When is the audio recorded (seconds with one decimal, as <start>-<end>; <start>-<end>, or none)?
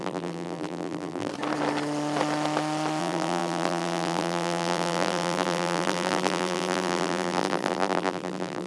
1.3-3.0